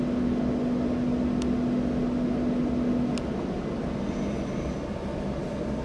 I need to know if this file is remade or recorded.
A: recorded